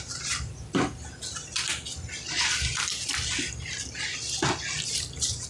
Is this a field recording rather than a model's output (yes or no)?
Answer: yes